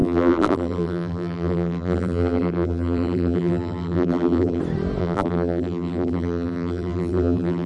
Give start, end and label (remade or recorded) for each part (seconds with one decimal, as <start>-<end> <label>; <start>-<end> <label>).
0.0-4.6 remade; 4.6-5.0 recorded; 5.0-7.7 remade